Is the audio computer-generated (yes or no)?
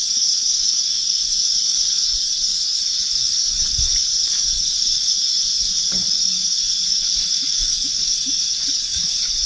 yes